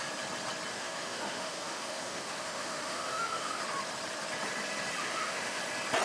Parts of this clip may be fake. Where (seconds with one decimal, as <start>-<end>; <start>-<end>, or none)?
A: 0.7-3.6; 5.0-5.6